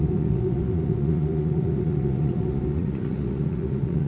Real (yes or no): no